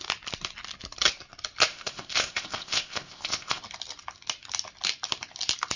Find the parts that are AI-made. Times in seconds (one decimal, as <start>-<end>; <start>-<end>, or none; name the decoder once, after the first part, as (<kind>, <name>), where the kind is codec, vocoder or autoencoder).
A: 1.7-3.6 (codec, ZipCodec)